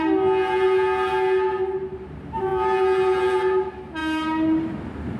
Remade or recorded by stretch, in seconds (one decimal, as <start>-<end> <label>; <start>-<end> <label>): 0.0-5.2 recorded